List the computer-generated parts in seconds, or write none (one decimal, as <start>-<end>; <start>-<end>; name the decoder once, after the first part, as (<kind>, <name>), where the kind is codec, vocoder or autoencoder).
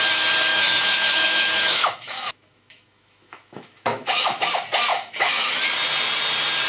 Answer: 0.5-4.5 (autoencoder, DAC-VAE); 4.9-5.5